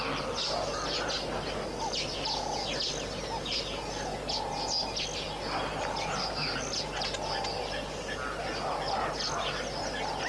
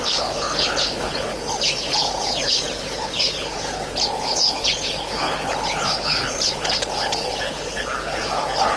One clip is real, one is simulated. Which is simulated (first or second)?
second